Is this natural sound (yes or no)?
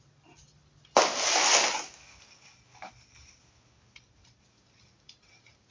yes